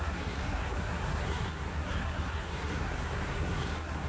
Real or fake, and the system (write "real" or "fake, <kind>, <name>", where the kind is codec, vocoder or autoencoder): fake, codec, SNAC